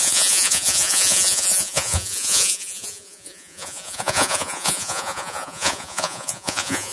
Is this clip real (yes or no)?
no